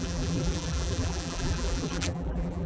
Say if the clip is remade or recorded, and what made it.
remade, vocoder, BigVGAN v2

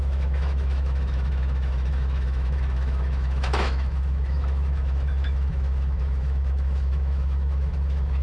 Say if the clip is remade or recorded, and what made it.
remade, autoencoder, DAC-VAE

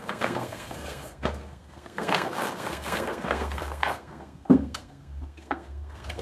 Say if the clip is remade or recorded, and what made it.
remade, codec, SNAC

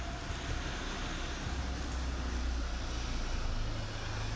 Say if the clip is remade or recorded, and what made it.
recorded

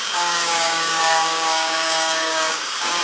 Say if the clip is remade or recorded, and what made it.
remade, codec, DAC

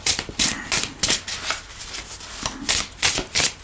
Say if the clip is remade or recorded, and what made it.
recorded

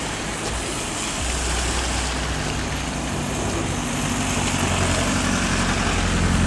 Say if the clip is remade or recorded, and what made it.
recorded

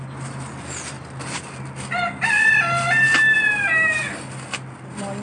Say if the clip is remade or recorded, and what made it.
recorded